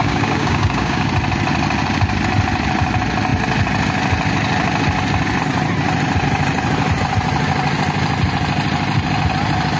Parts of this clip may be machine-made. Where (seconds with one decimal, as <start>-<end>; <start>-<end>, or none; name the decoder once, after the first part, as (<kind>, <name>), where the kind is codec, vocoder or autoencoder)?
0.0-1.1 (codec, DAC)

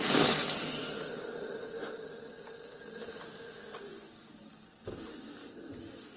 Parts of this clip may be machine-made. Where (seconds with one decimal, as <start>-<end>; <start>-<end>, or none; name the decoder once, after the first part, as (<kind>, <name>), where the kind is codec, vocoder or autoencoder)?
0.0-0.4 (codec, DAC); 4.1-4.5; 5.8-6.2